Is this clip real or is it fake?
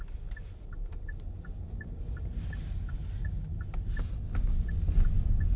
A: real